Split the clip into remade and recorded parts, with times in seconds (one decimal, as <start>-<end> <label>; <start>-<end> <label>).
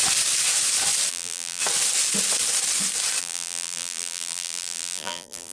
0.0-1.1 recorded; 1.1-1.6 remade; 1.6-3.2 recorded; 3.2-5.5 remade